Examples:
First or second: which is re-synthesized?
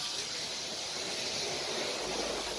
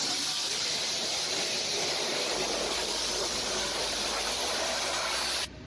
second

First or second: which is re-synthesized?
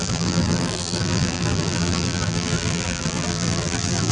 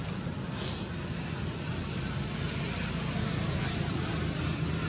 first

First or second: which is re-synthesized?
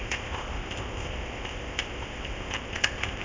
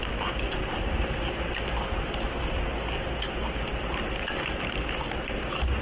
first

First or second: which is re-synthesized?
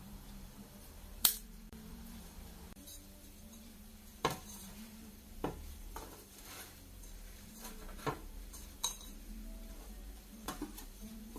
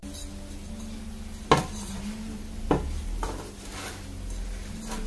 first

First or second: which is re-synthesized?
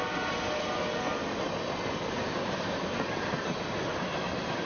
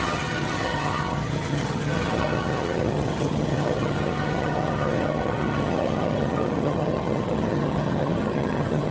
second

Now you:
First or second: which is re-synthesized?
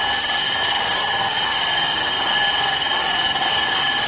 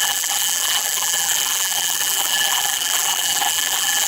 second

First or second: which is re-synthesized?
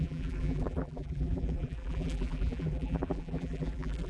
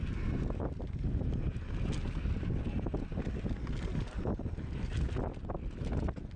first